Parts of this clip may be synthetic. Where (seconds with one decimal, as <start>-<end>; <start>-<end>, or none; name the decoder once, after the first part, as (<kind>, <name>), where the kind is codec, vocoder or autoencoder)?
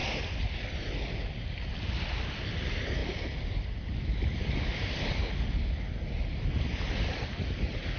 0.0-0.8 (vocoder, BigVGAN v2); 3.0-5.3